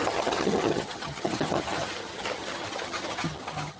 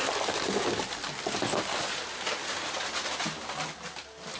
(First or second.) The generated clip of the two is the first